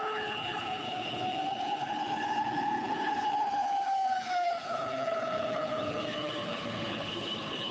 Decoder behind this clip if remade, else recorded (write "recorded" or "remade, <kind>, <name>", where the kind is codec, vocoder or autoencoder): remade, codec, HILCodec